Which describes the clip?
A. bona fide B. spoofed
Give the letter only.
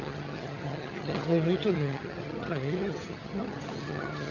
B